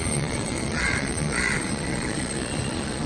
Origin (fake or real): fake